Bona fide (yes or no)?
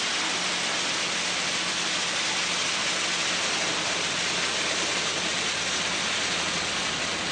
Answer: yes